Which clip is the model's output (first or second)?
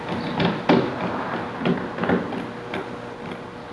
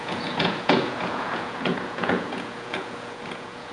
second